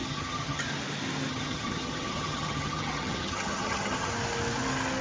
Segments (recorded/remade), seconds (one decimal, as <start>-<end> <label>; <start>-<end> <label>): 0.0-0.6 remade; 0.6-1.3 recorded; 1.3-4.1 remade; 4.1-5.0 recorded

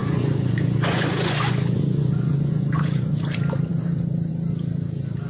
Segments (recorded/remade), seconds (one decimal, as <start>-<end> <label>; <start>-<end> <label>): 0.0-3.2 remade; 3.2-5.3 recorded

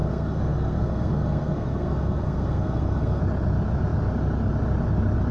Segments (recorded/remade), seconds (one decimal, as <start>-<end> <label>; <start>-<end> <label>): 0.0-3.2 remade; 3.2-5.3 recorded

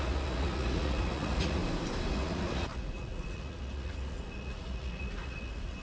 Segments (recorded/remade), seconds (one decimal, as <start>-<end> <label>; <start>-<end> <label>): 0.0-1.6 remade; 1.6-2.1 recorded; 2.1-5.8 remade